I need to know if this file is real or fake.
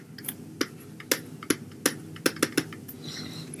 real